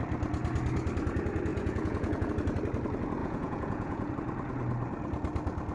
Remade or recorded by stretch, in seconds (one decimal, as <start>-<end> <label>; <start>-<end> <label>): 0.0-1.5 recorded; 1.5-2.3 remade; 2.3-3.2 recorded; 3.2-4.1 remade; 4.1-5.7 recorded